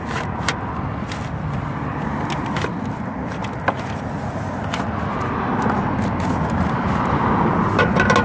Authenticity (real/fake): real